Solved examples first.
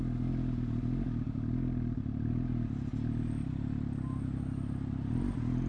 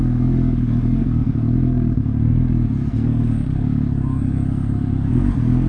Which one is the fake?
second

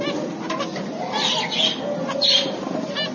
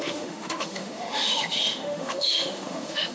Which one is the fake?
second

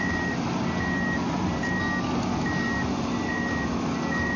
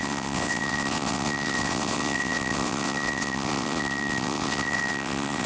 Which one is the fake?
second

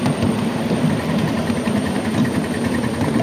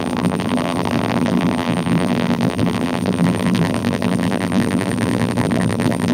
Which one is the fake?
second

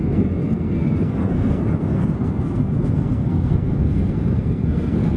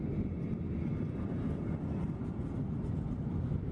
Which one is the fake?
first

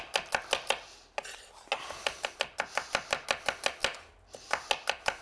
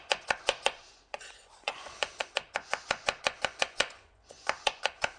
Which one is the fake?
second